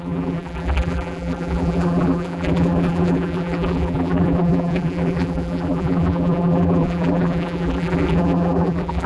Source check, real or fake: fake